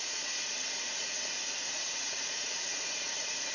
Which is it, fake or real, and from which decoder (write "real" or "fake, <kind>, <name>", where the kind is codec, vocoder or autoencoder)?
fake, vocoder, Vocos